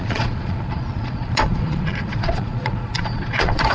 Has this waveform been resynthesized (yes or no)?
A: yes